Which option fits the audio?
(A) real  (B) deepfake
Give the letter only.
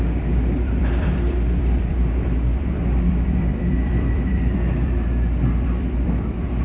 B